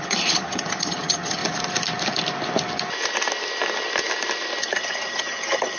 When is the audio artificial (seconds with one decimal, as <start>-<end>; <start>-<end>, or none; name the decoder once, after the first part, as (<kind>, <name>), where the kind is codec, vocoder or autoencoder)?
0.0-1.4 (vocoder, HiFi-GAN); 4.6-5.8